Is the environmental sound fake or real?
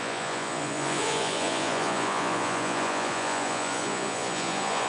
fake